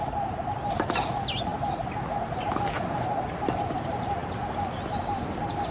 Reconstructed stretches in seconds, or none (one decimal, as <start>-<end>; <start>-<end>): none